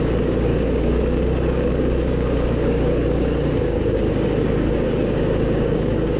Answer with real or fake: fake